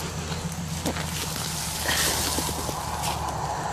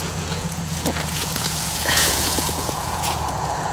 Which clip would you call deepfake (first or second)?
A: second